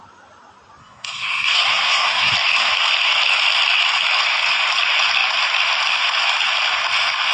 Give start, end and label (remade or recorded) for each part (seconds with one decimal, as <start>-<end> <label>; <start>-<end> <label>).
0.0-0.8 recorded; 0.8-2.3 remade; 2.3-7.3 recorded

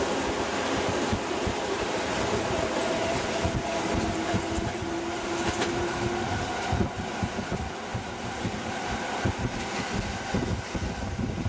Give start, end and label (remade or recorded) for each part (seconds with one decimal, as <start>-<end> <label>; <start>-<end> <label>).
0.0-11.5 recorded

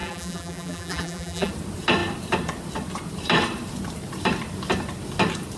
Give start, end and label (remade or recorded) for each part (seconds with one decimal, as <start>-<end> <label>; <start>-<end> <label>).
0.0-1.5 remade; 1.5-5.6 recorded

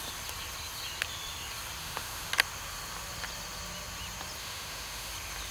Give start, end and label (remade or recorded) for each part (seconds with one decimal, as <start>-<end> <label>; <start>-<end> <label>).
0.0-1.8 recorded; 1.8-2.3 remade; 2.3-4.4 recorded; 4.4-5.1 remade; 5.1-5.5 recorded

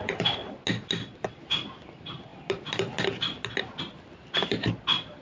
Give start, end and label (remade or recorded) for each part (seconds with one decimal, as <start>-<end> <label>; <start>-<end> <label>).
0.0-5.2 recorded

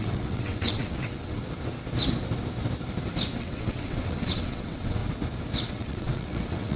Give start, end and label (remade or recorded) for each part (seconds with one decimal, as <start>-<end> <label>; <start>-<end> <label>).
0.0-1.4 remade; 1.4-3.4 recorded; 3.4-5.0 remade; 5.0-5.7 recorded; 5.7-6.8 remade